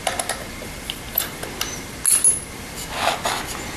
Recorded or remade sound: recorded